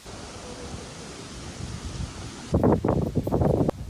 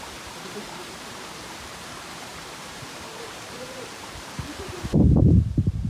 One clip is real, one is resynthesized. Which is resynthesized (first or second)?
second